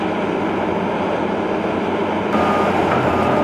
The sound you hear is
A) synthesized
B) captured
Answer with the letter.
B